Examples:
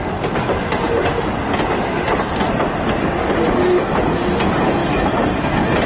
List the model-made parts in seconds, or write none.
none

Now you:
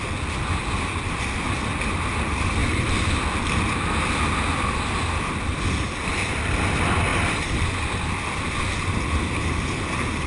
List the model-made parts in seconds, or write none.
none

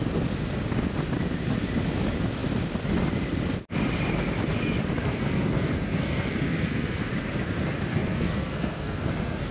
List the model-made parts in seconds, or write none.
5.0-7.1 (codec, SNAC); 7.9-9.5

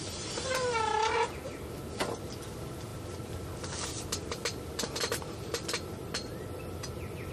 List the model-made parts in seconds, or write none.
none